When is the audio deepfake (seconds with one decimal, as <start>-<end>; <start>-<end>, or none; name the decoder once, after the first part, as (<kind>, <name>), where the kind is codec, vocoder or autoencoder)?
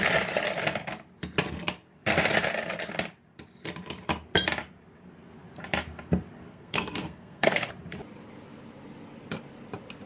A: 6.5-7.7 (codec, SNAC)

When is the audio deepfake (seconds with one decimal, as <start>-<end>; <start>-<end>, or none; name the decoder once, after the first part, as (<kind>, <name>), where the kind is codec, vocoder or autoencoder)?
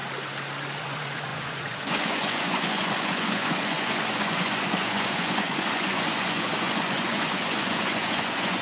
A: 0.8-8.6 (vocoder, Vocos)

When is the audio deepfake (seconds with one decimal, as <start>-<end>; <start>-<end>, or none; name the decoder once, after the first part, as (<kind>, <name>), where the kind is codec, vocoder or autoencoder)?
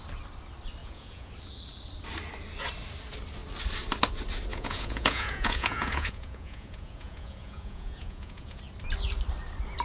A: 0.8-1.3 (vocoder, Vocos); 4.5-8.6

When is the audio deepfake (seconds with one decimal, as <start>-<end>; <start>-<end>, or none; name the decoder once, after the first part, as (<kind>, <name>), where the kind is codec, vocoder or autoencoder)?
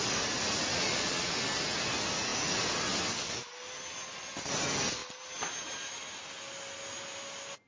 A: 0.7-1.3 (vocoder, Vocos)